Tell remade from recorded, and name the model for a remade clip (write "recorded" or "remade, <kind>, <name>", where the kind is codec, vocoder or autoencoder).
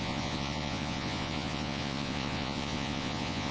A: remade, vocoder, Vocos